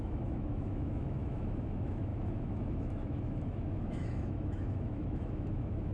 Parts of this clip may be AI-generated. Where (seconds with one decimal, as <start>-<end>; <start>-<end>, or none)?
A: 0.0-5.9